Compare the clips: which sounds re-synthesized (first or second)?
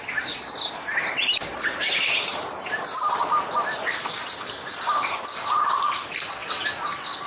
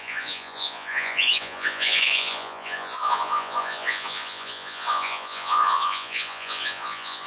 second